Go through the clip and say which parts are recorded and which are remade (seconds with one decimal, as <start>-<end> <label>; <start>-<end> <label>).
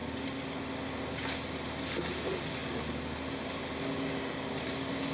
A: 0.0-5.1 recorded